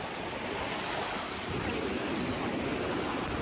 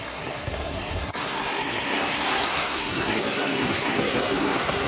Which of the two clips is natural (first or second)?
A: first